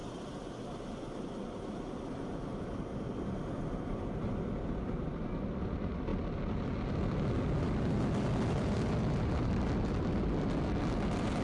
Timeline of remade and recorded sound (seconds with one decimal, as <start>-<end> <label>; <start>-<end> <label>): 0.0-11.4 recorded